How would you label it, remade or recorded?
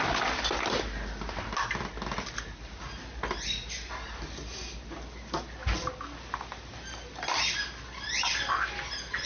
recorded